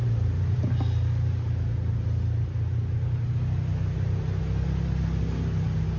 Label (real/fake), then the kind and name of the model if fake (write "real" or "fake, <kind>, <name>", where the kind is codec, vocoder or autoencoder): real